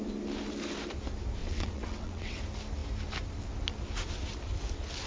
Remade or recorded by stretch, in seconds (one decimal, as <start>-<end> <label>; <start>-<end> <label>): 0.0-1.4 recorded; 1.4-2.4 remade; 2.4-5.1 recorded